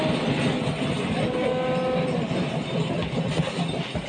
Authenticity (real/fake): real